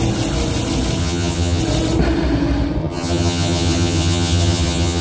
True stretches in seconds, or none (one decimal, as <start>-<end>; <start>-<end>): 0.0-1.0; 1.6-2.8